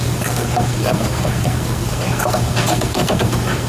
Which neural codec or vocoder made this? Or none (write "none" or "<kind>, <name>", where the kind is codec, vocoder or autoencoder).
codec, SNAC